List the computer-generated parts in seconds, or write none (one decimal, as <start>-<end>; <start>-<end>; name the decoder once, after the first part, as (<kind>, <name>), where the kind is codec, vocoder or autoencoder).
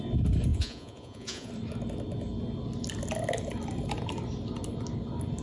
0.5-1.5 (vocoder, Vocos)